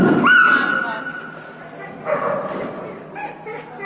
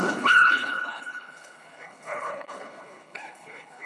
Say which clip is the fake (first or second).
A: second